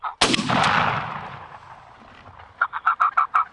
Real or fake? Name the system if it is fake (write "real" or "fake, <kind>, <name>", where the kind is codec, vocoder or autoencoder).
real